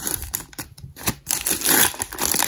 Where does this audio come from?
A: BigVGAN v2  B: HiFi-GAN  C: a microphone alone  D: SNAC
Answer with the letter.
C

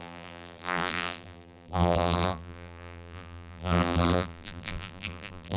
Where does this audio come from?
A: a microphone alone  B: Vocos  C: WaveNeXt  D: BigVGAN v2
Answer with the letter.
D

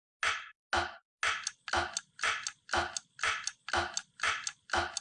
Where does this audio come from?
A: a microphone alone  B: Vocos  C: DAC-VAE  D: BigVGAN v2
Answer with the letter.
A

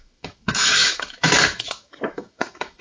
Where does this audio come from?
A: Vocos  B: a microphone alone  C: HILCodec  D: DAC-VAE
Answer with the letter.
D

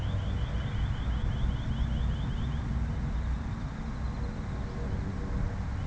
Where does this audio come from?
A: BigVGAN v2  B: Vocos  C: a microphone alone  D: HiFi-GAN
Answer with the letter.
C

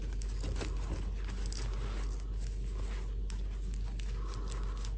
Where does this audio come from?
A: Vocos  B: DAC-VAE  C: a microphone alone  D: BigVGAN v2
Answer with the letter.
C